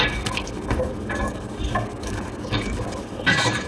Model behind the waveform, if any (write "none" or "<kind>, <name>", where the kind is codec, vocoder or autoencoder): codec, DAC